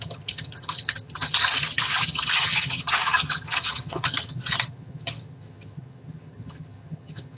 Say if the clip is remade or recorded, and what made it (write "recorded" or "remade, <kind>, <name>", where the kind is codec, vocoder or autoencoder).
remade, vocoder, HiFi-GAN